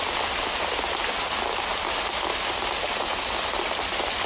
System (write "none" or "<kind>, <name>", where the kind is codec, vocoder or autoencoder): none